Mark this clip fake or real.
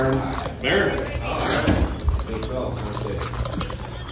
real